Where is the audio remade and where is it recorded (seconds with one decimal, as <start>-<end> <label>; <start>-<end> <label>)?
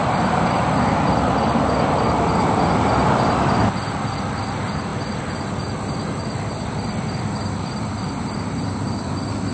0.0-0.5 remade; 0.5-9.5 recorded